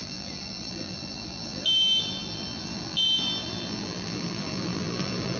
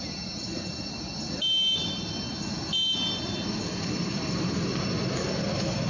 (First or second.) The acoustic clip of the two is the second